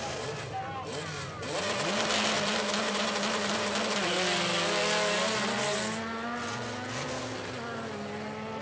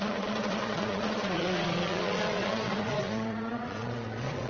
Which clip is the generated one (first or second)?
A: second